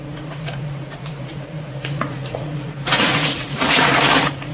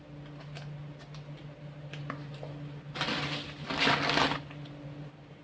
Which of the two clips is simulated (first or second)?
first